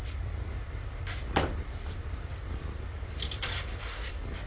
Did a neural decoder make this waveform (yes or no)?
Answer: yes